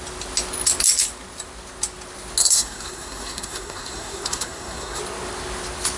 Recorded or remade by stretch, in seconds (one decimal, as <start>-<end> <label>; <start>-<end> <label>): 0.0-2.4 recorded; 2.4-5.0 remade; 5.0-6.0 recorded